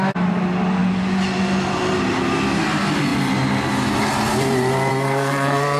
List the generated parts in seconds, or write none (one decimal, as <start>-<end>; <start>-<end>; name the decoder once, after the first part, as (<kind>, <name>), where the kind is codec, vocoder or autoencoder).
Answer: 4.9-5.8 (codec, SNAC)